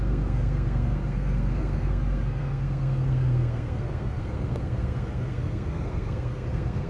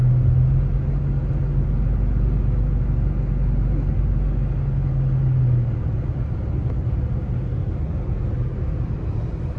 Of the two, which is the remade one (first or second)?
first